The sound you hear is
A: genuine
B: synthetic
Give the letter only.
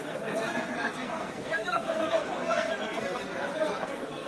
B